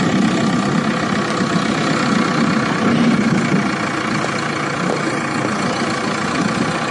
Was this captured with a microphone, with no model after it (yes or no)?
yes